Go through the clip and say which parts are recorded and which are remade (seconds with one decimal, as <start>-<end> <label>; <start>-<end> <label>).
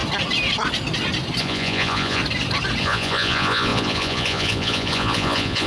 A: 0.0-1.4 recorded; 1.4-2.2 remade; 2.2-2.8 recorded; 2.8-5.7 remade